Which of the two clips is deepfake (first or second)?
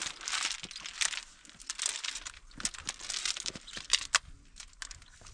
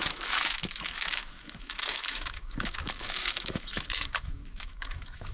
second